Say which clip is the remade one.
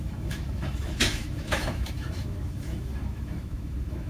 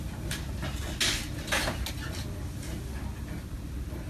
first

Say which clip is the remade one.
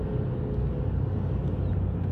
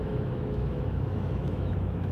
second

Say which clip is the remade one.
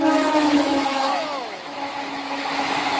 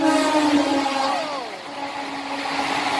first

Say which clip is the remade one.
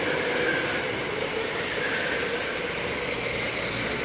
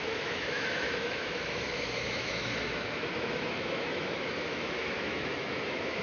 second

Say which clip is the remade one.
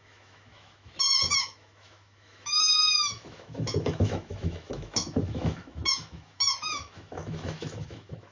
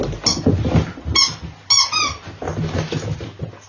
first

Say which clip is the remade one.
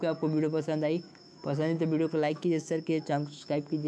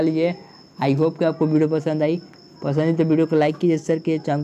first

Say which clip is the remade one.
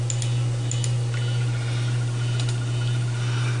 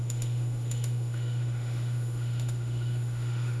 second